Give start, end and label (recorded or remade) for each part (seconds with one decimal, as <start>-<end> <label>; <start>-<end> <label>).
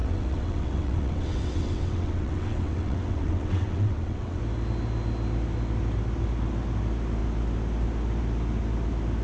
0.0-4.4 remade; 4.4-9.2 recorded